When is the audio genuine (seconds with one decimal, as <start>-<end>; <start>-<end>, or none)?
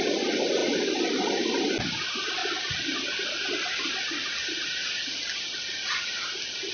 2.4-6.7